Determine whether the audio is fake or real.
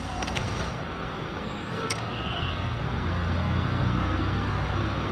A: fake